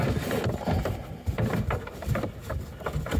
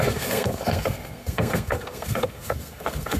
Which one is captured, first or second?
first